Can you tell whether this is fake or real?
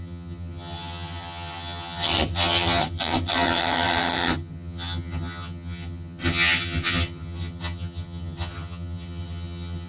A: fake